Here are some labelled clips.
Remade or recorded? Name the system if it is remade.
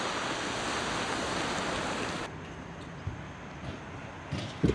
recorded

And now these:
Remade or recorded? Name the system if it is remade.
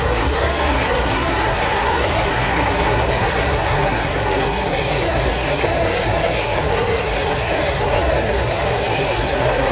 remade, codec, SNAC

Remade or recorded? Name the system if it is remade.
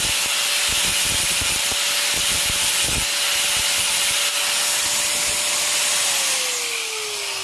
recorded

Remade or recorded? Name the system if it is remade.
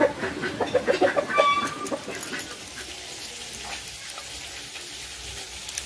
recorded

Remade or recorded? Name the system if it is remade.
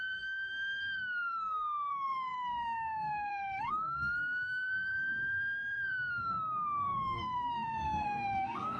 remade, codec, SNAC